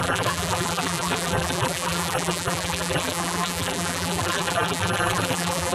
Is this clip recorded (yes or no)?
no